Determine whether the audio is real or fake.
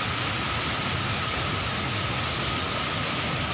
real